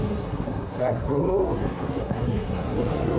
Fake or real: fake